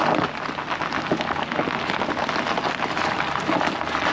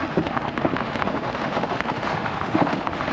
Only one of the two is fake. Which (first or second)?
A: second